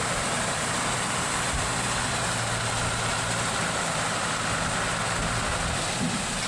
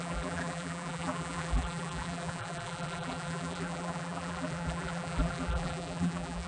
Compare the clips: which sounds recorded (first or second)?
first